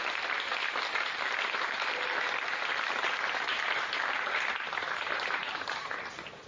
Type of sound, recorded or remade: recorded